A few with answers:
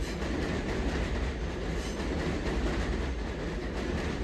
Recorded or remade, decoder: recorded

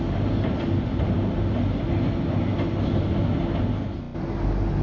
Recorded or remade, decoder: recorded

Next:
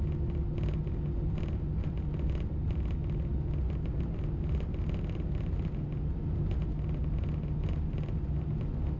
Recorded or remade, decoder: recorded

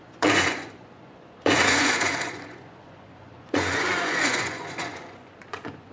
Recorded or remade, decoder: remade, vocoder, Vocos